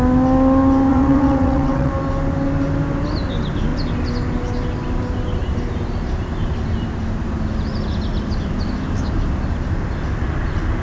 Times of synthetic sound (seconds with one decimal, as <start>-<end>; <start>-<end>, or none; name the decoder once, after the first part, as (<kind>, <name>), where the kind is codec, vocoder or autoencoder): 0.9-1.9 (vocoder, WaveNeXt)